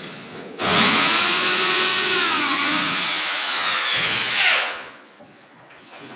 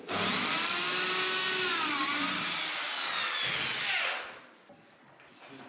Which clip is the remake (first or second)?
first